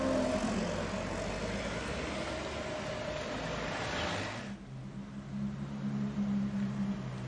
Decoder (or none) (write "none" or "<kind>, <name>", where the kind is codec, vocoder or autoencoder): none